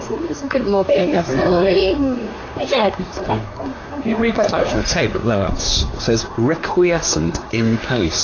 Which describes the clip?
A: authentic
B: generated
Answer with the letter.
B